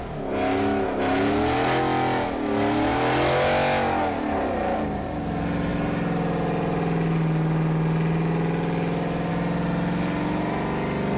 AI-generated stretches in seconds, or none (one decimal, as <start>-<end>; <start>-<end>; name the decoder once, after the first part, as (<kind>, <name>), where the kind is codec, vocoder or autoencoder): none